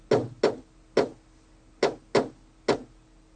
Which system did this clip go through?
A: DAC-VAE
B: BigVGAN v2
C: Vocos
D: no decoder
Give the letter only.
D